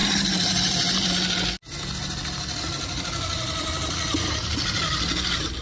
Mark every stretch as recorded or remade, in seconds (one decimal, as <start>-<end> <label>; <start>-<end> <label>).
0.0-1.1 remade; 1.1-5.6 recorded